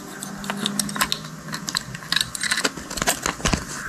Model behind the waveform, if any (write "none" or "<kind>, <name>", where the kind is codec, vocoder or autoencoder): none